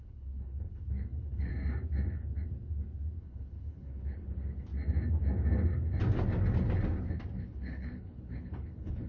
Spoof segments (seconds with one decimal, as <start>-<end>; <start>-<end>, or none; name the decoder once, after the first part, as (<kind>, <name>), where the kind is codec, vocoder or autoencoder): 0.0-1.5 (codec, HILCodec); 3.2-4.7; 7.4-9.1